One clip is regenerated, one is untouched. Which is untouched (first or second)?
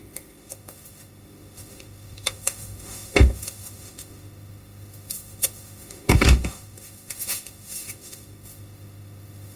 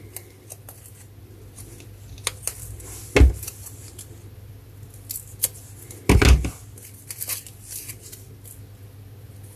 second